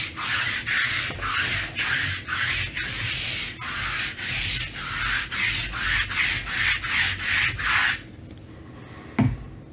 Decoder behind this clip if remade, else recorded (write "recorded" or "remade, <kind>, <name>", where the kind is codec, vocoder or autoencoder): recorded